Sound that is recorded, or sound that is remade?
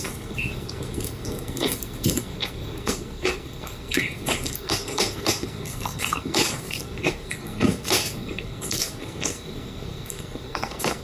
remade